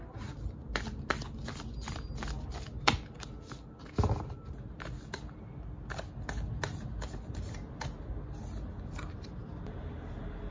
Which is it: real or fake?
real